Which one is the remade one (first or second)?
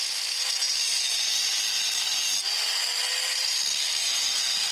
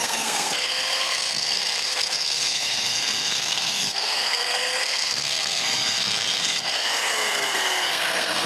second